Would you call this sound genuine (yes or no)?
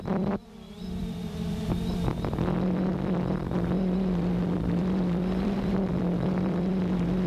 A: no